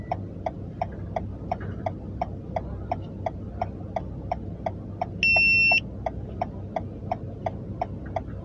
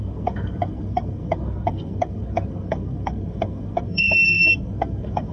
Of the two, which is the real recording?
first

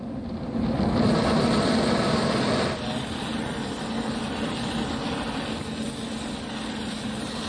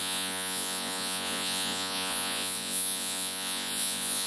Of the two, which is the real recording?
first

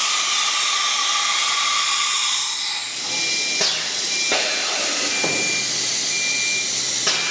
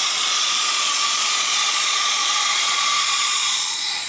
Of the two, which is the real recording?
first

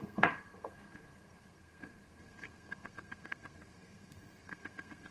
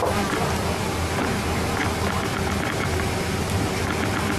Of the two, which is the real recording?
second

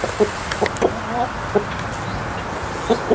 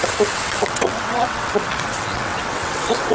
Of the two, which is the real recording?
first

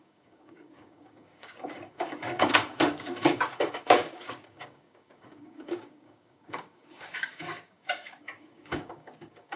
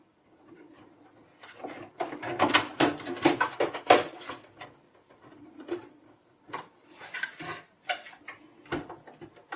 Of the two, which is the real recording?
second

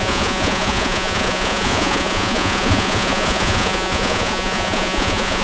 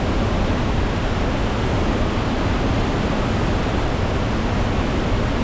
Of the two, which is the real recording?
second